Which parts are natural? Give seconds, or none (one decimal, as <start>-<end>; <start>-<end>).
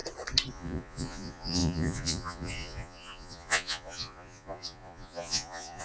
0.0-0.5